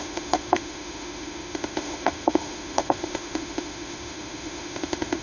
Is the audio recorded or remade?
remade